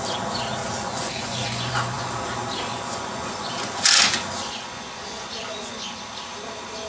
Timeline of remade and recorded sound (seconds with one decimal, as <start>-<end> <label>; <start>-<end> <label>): 0.0-0.6 recorded; 0.6-2.1 remade; 2.1-2.7 recorded; 2.7-6.0 remade; 6.0-6.9 recorded